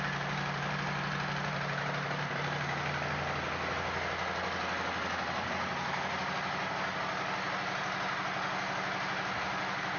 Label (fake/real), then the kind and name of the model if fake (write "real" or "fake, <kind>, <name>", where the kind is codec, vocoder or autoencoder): real